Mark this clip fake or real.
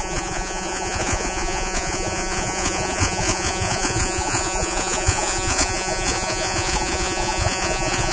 fake